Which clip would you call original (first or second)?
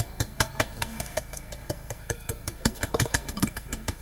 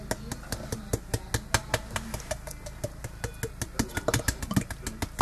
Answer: second